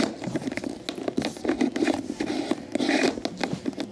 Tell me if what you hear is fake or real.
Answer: real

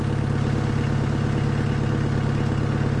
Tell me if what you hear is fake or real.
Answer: real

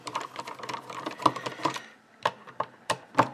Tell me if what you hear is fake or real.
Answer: fake